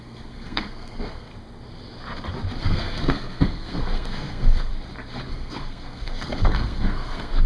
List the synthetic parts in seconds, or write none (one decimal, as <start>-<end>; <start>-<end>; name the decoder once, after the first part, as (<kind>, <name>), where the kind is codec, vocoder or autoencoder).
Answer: 0.0-1.3 (codec, SNAC); 2.6-4.7; 5.3-7.5